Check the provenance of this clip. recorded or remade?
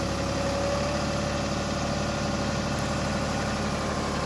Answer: recorded